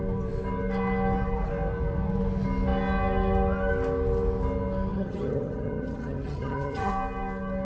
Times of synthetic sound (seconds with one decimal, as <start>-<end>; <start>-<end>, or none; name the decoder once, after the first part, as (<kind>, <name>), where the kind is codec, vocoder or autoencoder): 4.9-6.9 (vocoder, HiFi-GAN)